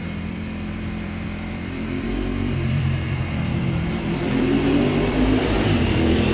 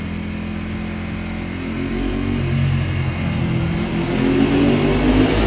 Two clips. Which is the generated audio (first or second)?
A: first